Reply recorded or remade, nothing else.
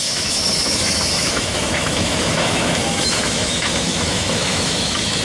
remade